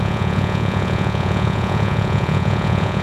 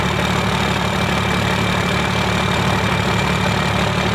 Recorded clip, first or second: second